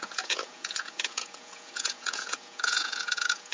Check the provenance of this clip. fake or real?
fake